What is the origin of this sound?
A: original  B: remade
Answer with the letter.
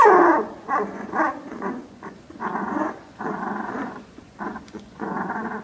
B